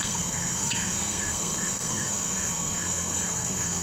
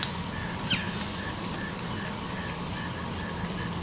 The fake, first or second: first